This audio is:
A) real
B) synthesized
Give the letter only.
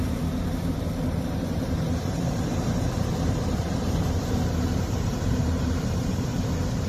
B